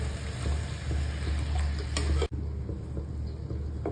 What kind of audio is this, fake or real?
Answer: real